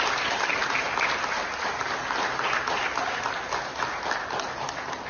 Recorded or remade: recorded